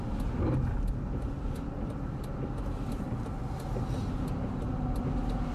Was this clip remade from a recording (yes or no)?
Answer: no